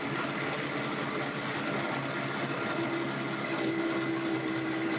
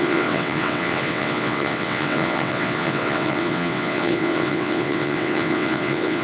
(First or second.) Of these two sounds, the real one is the first